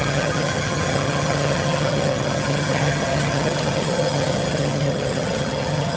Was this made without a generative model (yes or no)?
no